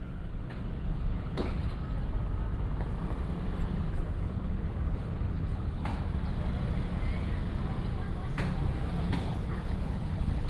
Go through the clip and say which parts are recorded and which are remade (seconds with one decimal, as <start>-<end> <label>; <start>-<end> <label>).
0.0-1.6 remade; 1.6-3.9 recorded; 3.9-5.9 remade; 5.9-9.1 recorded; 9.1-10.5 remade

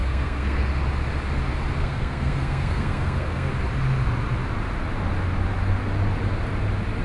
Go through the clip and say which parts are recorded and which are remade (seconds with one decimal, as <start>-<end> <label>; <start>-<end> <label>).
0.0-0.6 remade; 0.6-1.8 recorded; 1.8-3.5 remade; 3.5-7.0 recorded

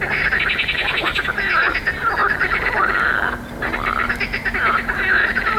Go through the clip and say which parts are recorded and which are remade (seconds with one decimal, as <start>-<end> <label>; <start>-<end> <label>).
0.0-5.6 recorded

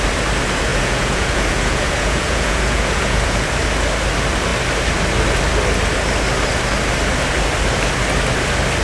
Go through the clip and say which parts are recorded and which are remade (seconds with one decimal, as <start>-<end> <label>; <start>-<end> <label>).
0.0-0.7 recorded; 0.7-3.5 remade; 3.5-8.8 recorded